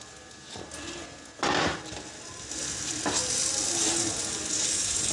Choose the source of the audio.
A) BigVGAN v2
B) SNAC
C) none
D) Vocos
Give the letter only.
C